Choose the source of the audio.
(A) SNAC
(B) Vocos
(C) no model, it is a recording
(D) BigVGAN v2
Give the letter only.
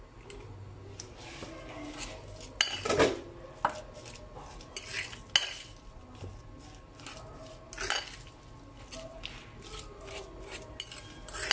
C